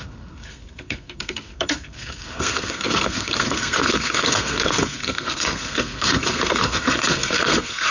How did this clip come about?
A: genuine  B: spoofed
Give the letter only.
B